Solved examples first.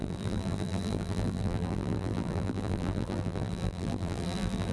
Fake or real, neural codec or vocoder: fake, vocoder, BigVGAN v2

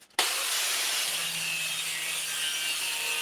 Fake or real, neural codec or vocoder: real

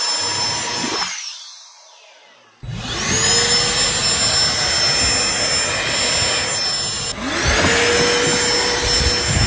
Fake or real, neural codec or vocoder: real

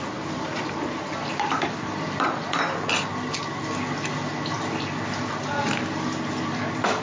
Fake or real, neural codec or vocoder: real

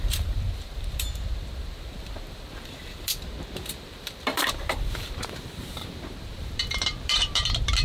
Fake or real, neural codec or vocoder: fake, vocoder, BigVGAN v2